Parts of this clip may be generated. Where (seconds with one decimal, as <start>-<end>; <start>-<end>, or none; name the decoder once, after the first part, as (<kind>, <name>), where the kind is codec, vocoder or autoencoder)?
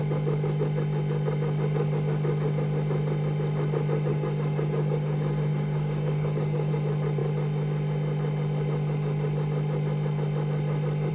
4.1-6.7 (codec, DAC)